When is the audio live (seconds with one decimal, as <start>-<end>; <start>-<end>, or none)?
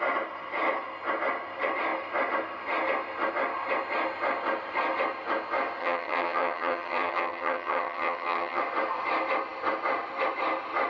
0.0-5.8; 8.6-10.9